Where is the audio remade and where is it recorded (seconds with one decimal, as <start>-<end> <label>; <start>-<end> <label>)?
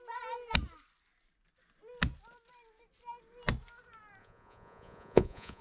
0.0-4.2 recorded; 4.2-5.6 remade